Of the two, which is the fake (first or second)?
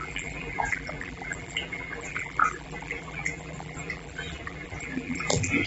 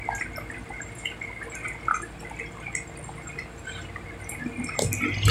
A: first